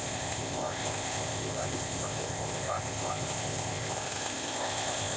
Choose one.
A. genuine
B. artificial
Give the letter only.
B